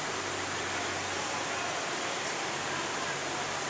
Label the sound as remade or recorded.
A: recorded